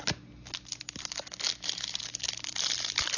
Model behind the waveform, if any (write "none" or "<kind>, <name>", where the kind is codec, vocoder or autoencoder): none